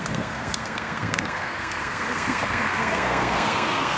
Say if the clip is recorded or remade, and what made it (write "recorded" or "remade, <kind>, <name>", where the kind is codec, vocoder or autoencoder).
remade, codec, SNAC